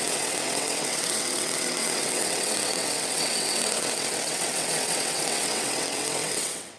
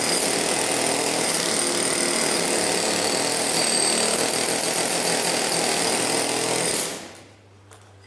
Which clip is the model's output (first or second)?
first